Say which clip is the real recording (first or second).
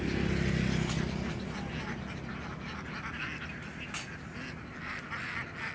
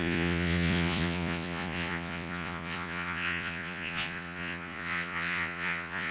first